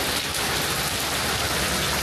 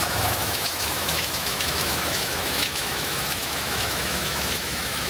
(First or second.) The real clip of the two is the first